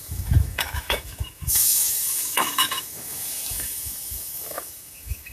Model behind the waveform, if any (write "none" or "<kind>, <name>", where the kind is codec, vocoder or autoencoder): autoencoder, DAC-VAE